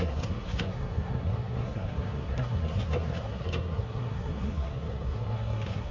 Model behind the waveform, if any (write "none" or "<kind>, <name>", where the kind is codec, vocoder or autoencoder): codec, SNAC